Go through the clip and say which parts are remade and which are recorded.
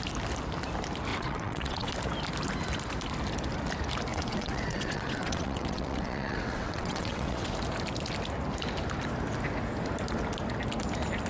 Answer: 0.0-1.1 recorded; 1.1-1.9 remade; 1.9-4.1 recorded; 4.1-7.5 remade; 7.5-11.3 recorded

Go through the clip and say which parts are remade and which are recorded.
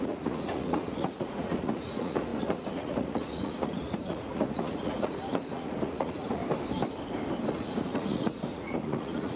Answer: 0.0-6.4 remade; 6.4-7.5 recorded; 7.5-9.4 remade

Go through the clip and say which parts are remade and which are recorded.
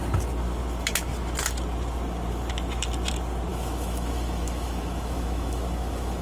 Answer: 0.0-3.5 recorded; 3.5-6.2 remade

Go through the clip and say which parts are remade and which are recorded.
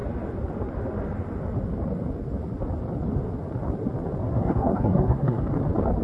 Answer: 0.0-4.2 recorded; 4.2-5.4 remade; 5.4-6.0 recorded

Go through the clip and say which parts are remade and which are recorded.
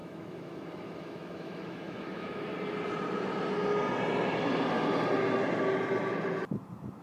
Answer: 0.0-2.5 remade; 2.5-7.0 recorded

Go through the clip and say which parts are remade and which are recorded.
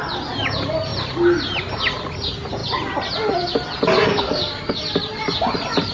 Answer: 0.0-4.1 recorded; 4.1-4.8 remade; 4.8-5.9 recorded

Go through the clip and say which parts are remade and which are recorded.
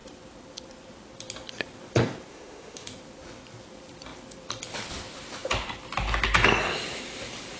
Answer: 0.0-2.3 recorded; 2.3-2.9 remade; 2.9-7.6 recorded